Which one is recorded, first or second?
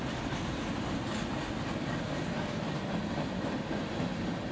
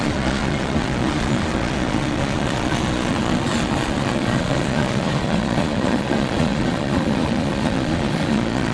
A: first